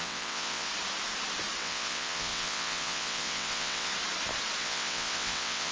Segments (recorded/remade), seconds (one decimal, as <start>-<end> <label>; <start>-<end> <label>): 0.0-0.7 remade; 0.7-1.6 recorded; 1.6-3.9 remade; 3.9-4.6 recorded; 4.6-5.7 remade